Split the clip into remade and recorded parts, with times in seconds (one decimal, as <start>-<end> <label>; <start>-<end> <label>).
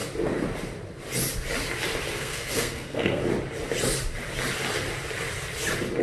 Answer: 0.0-2.1 recorded; 2.1-3.2 remade; 3.2-6.0 recorded